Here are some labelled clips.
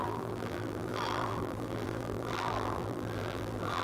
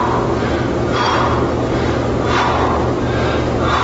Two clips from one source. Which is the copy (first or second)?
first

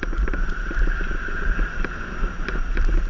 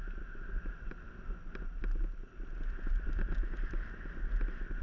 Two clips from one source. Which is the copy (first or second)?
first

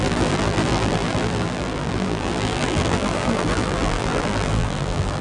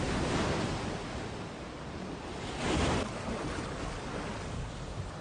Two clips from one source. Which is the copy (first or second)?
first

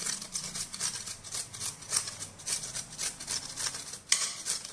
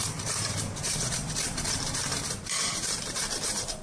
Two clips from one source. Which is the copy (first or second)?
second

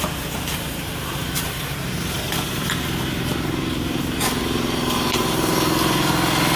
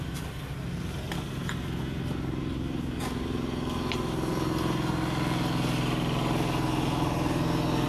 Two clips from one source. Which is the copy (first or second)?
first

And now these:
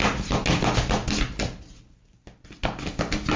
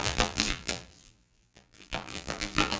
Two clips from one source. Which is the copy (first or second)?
second